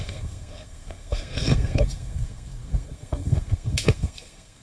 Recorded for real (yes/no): no